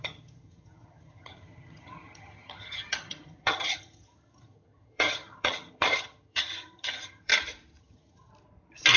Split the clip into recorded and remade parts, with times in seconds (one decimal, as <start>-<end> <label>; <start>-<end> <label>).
0.0-7.3 remade; 7.3-7.8 recorded; 7.8-8.3 remade; 8.3-9.0 recorded